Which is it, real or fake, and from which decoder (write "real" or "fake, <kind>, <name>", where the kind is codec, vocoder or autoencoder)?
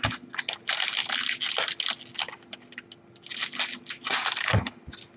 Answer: real